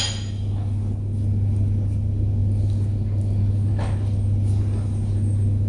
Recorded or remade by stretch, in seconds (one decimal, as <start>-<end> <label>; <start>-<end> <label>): 0.0-5.7 recorded